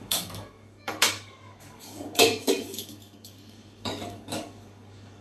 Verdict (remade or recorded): remade